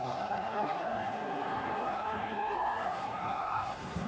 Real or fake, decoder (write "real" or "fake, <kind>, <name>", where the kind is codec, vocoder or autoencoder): fake, codec, SNAC